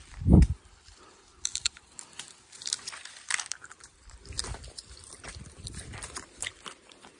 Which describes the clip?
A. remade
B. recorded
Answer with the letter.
A